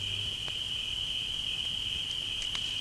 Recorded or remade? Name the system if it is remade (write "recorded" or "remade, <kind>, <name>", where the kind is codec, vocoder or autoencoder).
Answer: recorded